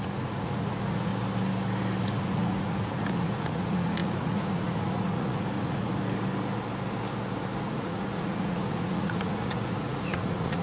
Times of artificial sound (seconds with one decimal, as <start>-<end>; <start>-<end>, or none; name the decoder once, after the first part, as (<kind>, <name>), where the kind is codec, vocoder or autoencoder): 0.0-1.1 (vocoder, Vocos); 2.0-5.9; 7.6-10.6

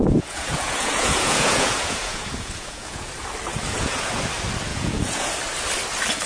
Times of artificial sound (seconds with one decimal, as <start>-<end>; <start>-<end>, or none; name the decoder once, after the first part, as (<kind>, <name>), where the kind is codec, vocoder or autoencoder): 0.0-3.1 (vocoder, Vocos); 3.5-4.2; 4.7-5.3

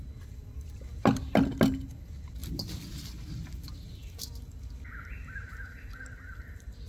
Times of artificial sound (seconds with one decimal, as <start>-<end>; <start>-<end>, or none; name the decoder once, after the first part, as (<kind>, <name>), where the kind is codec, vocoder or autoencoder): none

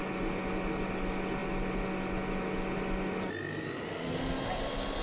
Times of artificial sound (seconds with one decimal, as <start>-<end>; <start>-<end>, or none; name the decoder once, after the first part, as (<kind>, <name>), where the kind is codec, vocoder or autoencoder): none